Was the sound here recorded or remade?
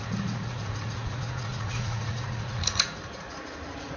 remade